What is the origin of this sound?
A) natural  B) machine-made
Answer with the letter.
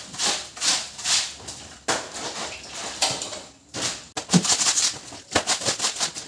A